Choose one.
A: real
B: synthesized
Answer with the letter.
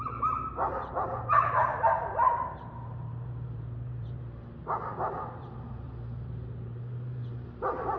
B